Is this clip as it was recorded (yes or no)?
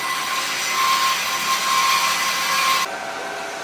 yes